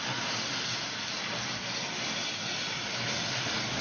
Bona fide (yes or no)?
yes